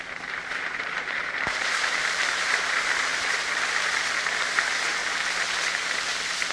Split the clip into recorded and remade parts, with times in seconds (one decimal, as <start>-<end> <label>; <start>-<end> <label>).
0.0-3.1 remade; 3.1-3.7 recorded; 3.7-5.0 remade; 5.0-5.7 recorded; 5.7-6.5 remade